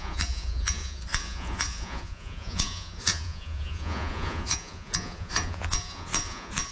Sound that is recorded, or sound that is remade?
remade